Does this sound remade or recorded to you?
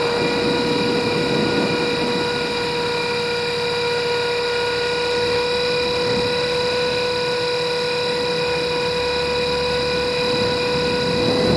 recorded